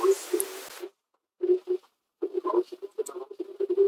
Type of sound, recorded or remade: recorded